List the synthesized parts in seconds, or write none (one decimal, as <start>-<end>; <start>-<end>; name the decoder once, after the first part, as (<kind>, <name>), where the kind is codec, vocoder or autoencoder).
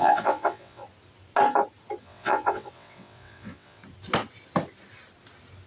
0.0-0.8 (vocoder, WaveNeXt); 2.0-3.8